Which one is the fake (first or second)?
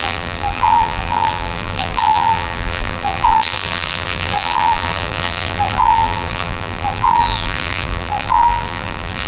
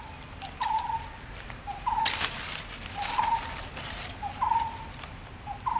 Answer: first